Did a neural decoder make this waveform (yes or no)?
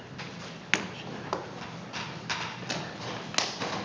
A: no